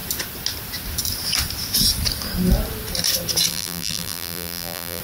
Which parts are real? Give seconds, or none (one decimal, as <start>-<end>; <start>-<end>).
0.0-3.5